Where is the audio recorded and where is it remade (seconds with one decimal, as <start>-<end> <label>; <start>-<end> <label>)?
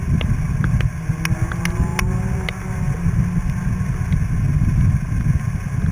0.0-5.9 recorded